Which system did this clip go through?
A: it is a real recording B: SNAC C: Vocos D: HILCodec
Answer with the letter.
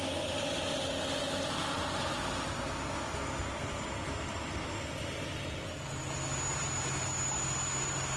A